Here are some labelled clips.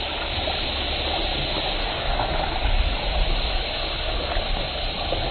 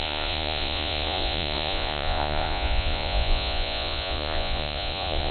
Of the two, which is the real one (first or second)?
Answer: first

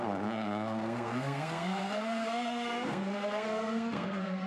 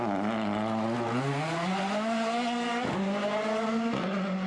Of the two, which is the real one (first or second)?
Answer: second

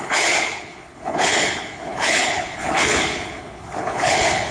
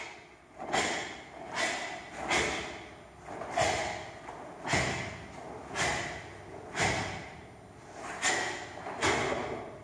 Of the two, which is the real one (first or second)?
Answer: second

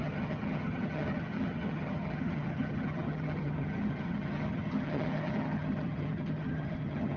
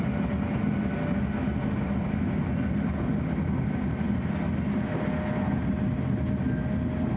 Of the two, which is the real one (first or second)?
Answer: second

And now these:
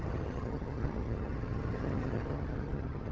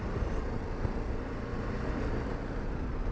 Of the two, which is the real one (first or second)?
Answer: second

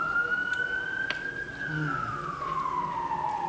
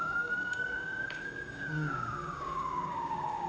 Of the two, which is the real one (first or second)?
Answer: first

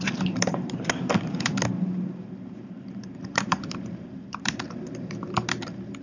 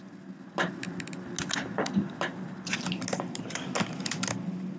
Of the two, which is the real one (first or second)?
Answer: second